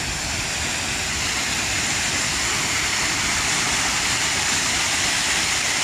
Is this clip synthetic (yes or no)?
yes